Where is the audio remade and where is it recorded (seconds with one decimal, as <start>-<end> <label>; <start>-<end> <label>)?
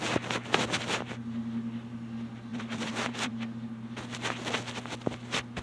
0.0-2.5 recorded; 2.5-3.3 remade; 3.3-5.6 recorded